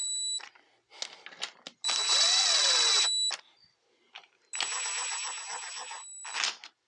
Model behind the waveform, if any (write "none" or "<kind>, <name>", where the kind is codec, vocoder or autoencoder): none